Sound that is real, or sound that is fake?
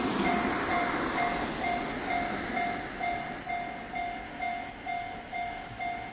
real